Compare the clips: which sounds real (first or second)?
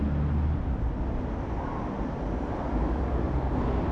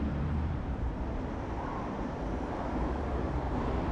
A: first